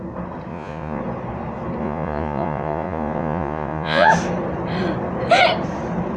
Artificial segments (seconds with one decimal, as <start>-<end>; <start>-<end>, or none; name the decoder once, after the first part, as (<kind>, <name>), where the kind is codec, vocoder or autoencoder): 0.5-1.0 (vocoder, Vocos); 1.8-4.1